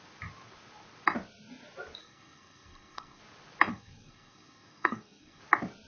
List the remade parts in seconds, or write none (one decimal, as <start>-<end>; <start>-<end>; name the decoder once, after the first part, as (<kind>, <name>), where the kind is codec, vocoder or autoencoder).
2.0-3.2 (codec, SNAC); 3.7-5.4